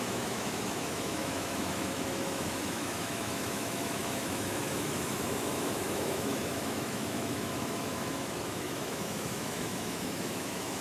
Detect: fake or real fake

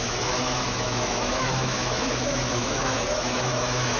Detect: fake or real fake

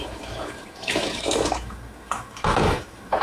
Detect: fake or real fake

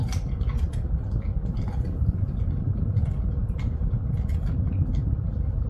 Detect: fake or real real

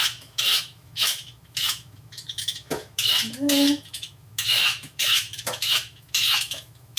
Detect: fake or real fake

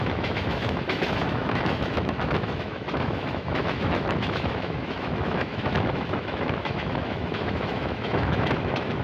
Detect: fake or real fake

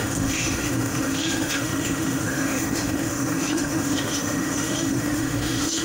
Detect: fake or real fake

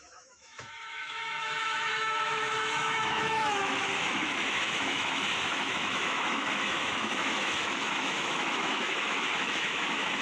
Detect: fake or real fake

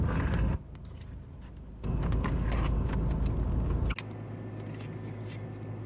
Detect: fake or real real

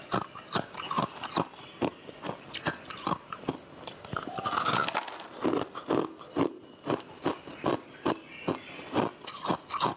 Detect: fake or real real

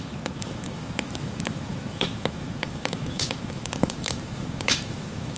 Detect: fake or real fake